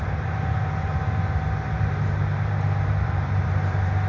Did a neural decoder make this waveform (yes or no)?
yes